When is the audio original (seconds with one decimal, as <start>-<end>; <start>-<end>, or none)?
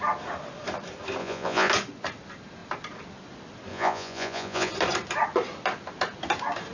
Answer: 0.0-1.2; 1.7-3.7; 4.7-6.7